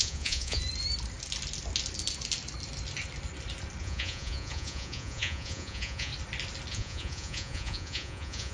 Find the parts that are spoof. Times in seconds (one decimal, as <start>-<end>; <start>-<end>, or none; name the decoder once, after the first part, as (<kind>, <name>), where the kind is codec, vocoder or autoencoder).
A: 0.0-0.6 (vocoder, Vocos); 3.8-6.1; 6.7-8.5